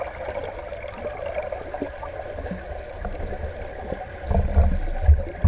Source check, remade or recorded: recorded